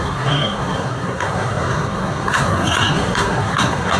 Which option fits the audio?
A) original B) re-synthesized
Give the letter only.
B